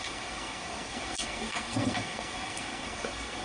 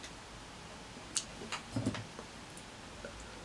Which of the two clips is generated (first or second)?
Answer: first